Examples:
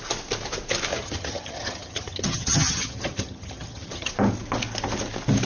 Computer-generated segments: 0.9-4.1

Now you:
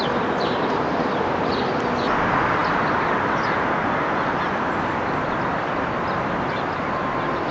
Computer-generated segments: none

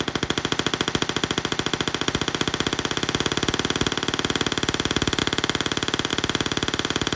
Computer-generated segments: none

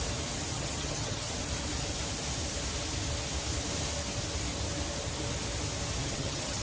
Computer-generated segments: 0.5-1.3; 6.0-6.6

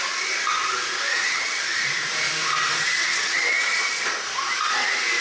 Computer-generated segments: 1.1-1.6; 3.0-3.5

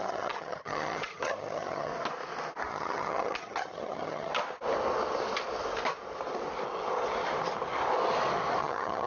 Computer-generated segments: 0.0-1.9; 2.7-4.3; 8.6-9.1

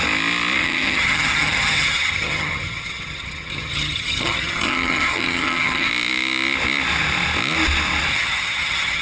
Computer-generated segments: 0.6-5.9; 8.1-9.0

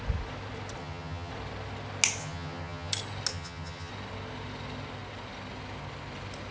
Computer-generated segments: 0.8-1.3; 2.2-2.9; 3.3-3.9